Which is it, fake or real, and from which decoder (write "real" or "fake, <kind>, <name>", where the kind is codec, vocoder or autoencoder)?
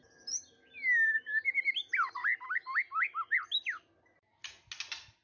real